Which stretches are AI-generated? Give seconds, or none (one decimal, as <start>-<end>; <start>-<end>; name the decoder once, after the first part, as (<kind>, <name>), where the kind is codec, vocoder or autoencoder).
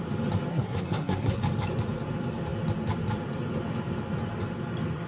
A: 0.5-1.4 (codec, SNAC)